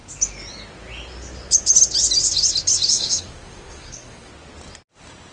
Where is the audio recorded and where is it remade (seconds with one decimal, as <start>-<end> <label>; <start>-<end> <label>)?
0.0-2.9 recorded; 2.9-4.3 remade; 4.3-5.3 recorded